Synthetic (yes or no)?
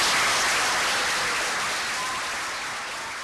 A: no